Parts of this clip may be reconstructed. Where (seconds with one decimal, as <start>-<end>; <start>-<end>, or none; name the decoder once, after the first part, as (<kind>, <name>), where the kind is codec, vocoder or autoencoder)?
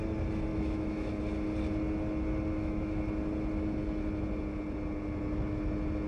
0.5-1.2 (autoencoder, DAC-VAE); 2.5-3.0